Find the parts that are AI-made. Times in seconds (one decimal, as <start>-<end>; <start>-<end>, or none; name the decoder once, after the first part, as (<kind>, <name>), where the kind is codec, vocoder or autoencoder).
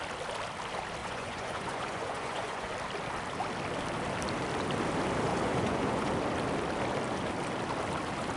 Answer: 1.0-2.7 (vocoder, Vocos); 5.3-6.1